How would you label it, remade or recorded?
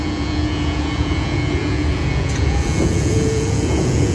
remade